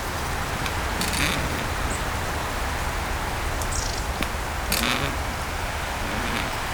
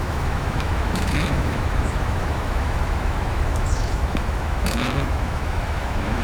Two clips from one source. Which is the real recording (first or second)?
first